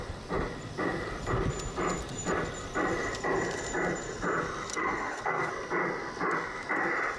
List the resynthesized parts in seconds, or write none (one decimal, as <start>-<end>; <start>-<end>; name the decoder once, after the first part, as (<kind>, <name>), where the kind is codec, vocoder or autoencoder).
4.7-5.5 (codec, SNAC)